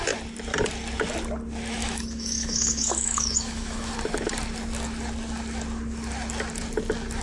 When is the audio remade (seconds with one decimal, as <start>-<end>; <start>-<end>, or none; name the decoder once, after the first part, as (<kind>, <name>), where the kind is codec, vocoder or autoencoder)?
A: 1.8-3.9 (autoencoder, DAC-VAE)